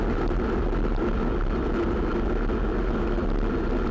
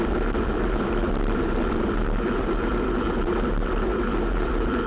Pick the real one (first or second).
first